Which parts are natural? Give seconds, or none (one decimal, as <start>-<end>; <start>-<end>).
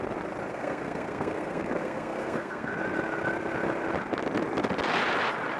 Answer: 0.0-0.5; 2.7-5.6